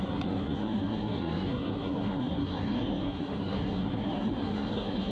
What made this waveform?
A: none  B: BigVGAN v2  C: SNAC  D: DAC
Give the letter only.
C